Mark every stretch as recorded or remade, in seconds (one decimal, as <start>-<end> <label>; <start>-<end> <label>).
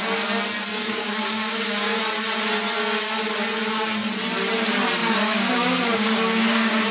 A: 0.0-0.7 recorded; 0.7-2.0 remade; 2.0-5.0 recorded; 5.0-5.5 remade; 5.5-5.9 recorded; 5.9-6.9 remade